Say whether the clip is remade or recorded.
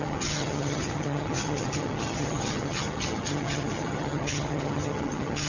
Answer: remade